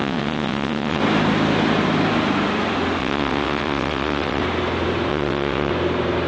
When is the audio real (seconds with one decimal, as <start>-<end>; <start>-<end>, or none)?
1.0-3.0; 4.4-5.1; 5.7-6.3